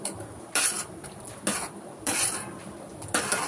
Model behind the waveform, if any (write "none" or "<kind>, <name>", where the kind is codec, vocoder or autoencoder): none